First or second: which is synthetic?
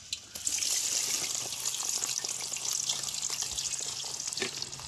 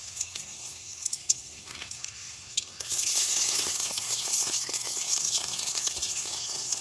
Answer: second